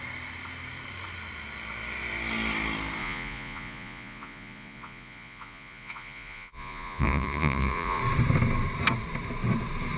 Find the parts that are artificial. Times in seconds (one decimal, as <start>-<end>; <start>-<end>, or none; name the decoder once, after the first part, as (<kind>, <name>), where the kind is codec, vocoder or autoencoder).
3.0-8.0 (vocoder, Vocos)